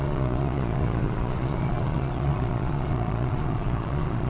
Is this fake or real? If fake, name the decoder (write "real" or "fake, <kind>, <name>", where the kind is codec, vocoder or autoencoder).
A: fake, vocoder, Vocos